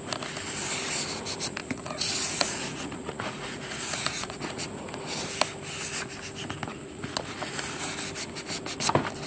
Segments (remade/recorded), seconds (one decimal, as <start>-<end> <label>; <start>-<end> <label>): 0.0-1.6 recorded; 1.6-5.0 remade; 5.0-6.7 recorded; 6.7-7.9 remade; 7.9-9.3 recorded